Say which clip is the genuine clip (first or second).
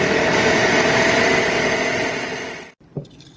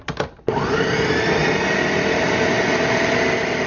second